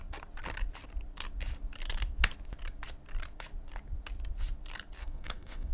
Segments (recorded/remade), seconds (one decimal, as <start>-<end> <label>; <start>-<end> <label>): 0.0-5.0 recorded; 5.0-5.7 remade